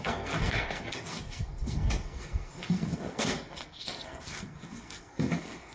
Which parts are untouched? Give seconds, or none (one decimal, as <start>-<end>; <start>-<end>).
none